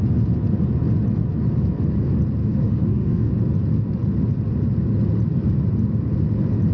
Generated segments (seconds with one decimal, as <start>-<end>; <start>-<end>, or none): 2.4-3.3